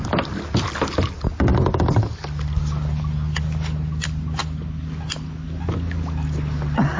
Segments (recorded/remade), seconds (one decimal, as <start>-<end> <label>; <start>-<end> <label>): 0.0-7.0 recorded